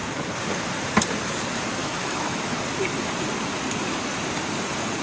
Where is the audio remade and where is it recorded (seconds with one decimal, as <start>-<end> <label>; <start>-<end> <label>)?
0.0-1.8 recorded; 1.8-2.6 remade; 2.6-5.0 recorded